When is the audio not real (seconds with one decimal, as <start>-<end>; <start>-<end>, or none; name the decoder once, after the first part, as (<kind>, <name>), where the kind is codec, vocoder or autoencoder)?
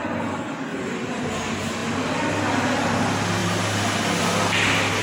0.7-1.2 (vocoder, BigVGAN v2)